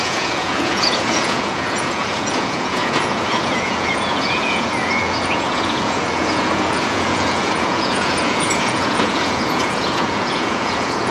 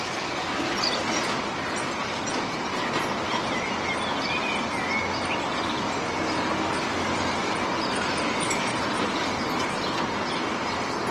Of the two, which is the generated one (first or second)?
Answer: first